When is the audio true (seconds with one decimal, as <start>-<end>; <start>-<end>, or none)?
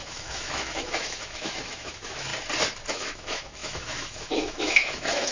2.3-2.9